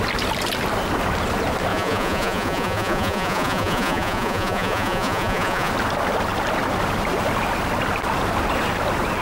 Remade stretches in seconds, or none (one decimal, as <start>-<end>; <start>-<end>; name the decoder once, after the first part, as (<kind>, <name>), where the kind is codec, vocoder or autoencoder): 1.7-5.7 (vocoder, Vocos)